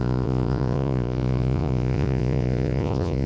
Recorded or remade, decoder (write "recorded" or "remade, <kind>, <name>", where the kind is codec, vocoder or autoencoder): remade, vocoder, Vocos